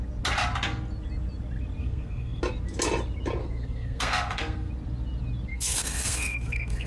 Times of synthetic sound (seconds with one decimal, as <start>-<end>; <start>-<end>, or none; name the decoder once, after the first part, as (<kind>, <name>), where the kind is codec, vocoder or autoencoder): 1.8-2.4 (codec, SNAC); 3.4-4.7; 5.5-6.9